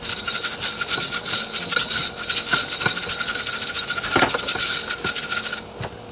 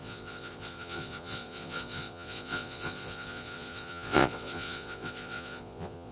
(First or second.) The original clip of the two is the first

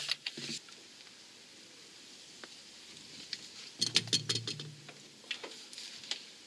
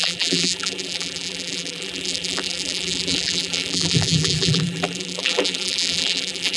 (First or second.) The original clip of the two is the first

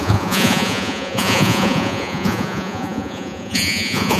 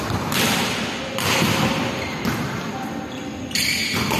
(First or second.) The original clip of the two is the second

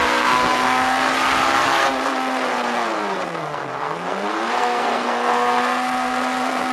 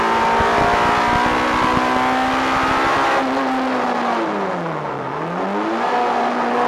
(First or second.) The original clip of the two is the second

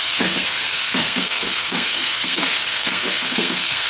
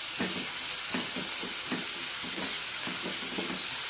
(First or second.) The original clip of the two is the second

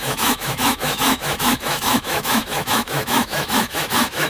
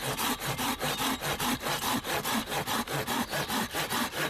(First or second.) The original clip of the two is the second